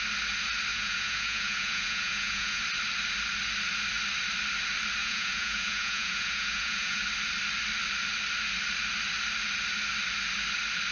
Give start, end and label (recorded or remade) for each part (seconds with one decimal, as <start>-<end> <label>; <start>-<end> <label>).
0.0-0.7 recorded; 0.7-2.6 remade; 2.6-5.0 recorded; 5.0-7.0 remade; 7.0-10.9 recorded

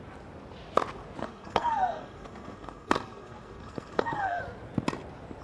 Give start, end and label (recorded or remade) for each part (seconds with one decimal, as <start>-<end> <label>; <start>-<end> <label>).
0.0-1.2 recorded; 1.2-4.4 remade; 4.4-5.4 recorded

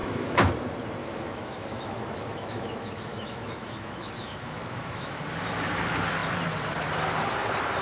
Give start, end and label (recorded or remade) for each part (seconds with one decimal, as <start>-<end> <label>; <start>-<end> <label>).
0.0-0.5 remade; 0.5-1.0 recorded; 1.0-5.2 remade; 5.2-7.8 recorded